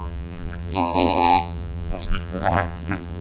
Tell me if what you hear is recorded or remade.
remade